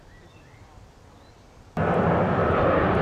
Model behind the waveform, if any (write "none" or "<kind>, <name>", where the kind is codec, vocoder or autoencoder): vocoder, BigVGAN v2